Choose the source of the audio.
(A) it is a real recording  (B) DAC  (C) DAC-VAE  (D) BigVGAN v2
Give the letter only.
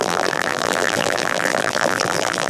D